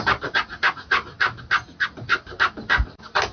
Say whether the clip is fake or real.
real